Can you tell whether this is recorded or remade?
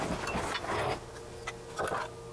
recorded